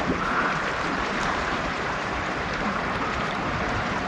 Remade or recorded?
remade